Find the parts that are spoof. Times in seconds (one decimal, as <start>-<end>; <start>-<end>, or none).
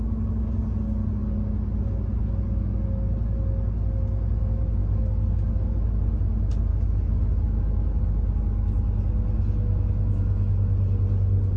4.8-5.9; 6.7-7.3